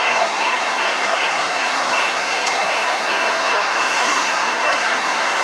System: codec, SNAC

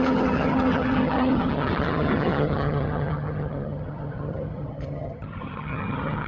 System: vocoder, HiFi-GAN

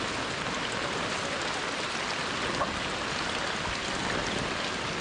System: none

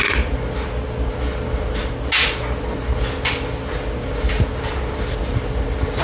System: none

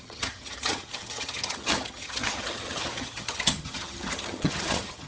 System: vocoder, HiFi-GAN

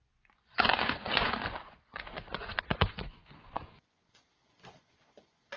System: vocoder, Vocos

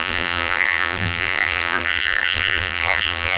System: vocoder, BigVGAN v2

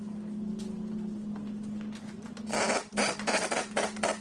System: none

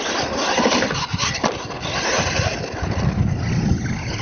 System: none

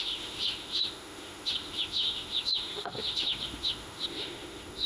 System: autoencoder, DAC-VAE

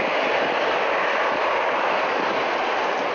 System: none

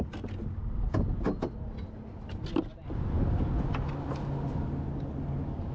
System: none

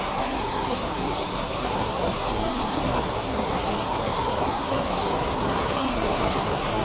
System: codec, SNAC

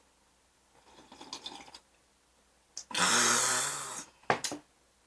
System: none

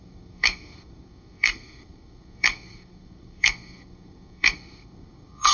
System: codec, SNAC